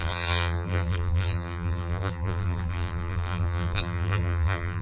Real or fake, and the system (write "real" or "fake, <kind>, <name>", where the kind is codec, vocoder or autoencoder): fake, vocoder, BigVGAN v2